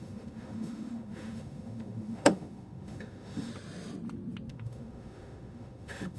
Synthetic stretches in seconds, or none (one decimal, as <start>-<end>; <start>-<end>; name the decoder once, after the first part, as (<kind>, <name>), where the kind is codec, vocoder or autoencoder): 0.0-3.5 (autoencoder, DAC-VAE); 4.5-6.2